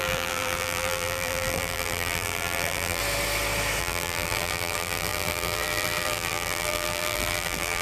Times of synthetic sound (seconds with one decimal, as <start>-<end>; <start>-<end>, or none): 0.0-3.0; 3.8-7.8